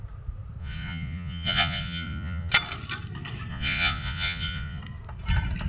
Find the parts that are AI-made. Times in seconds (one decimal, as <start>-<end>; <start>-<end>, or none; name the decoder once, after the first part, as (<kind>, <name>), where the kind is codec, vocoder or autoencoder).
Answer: 0.6-2.5 (vocoder, Vocos); 3.5-4.8